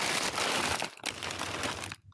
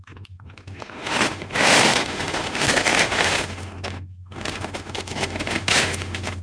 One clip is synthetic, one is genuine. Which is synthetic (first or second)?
second